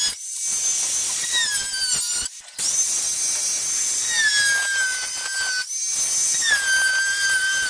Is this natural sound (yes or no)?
yes